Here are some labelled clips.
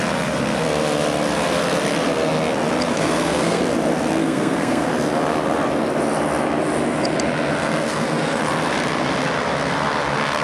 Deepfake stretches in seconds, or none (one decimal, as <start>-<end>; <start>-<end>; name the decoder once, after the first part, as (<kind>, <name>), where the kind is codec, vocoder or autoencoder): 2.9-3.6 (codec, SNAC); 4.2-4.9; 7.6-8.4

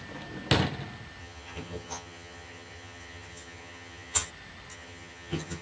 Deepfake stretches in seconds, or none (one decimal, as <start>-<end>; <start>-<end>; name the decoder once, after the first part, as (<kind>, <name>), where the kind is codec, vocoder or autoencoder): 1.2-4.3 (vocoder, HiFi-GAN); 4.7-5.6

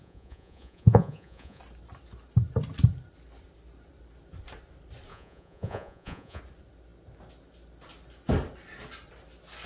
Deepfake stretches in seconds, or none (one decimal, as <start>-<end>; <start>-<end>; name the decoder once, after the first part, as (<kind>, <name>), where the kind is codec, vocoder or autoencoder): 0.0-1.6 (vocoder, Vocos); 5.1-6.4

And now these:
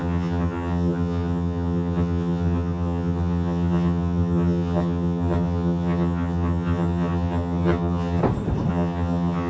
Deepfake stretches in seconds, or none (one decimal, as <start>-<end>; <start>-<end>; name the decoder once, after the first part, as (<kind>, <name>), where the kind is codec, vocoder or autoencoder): 0.0-8.2 (vocoder, HiFi-GAN); 8.7-9.5

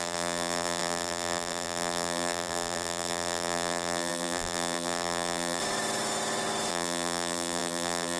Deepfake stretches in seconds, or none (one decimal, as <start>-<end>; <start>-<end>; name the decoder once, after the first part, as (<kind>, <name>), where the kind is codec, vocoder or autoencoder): 0.0-5.6 (vocoder, BigVGAN v2); 6.7-8.2